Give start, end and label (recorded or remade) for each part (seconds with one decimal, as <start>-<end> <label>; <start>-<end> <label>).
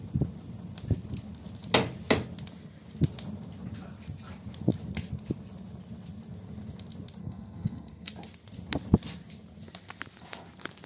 0.0-7.2 recorded; 7.2-8.1 remade; 8.1-10.9 recorded